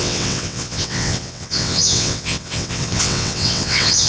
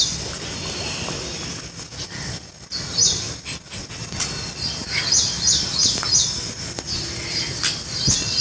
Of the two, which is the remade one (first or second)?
first